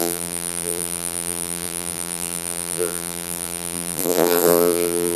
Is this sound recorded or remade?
remade